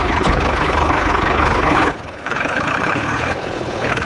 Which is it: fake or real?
fake